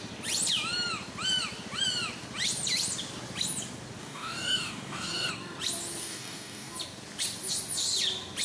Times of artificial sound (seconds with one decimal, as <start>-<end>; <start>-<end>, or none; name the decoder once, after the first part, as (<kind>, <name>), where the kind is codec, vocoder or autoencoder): 4.0-5.3 (codec, DAC); 6.0-6.7